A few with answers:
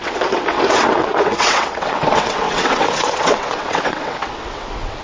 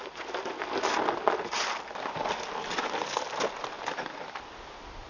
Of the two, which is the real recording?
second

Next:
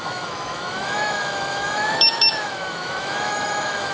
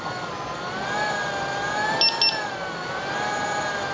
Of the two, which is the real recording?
second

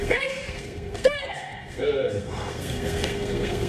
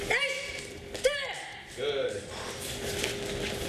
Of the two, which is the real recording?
second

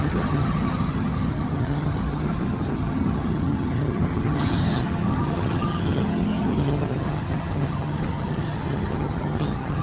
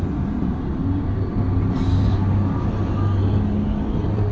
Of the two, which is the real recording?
second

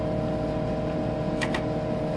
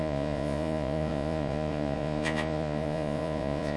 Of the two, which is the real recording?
first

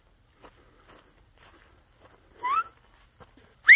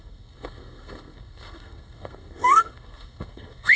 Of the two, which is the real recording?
first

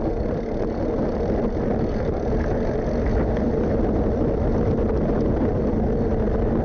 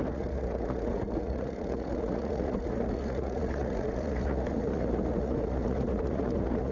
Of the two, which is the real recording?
first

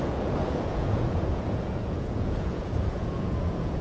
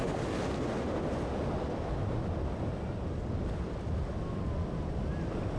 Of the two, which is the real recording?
second